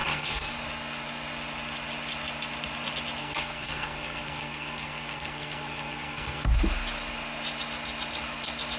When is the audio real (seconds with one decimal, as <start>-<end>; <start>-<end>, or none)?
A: 0.5-3.2; 6.5-8.8